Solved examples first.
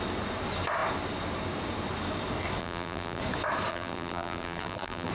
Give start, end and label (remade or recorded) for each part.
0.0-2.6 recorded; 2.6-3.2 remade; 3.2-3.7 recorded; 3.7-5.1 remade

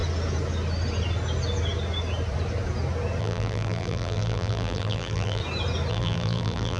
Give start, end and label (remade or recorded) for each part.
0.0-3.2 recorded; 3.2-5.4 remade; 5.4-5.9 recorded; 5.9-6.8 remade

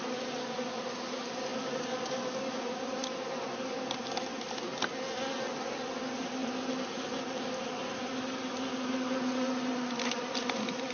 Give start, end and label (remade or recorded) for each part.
0.0-1.5 recorded; 1.5-2.5 remade; 2.5-6.4 recorded; 6.4-10.0 remade; 10.0-10.9 recorded